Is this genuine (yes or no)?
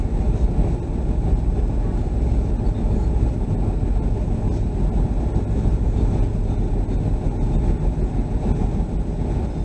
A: yes